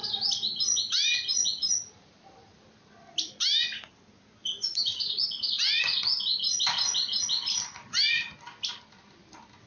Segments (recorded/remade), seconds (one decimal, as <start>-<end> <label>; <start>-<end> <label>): 0.0-9.7 recorded